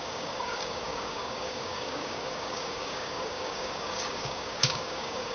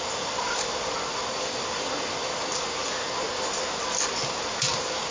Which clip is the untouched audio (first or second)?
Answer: second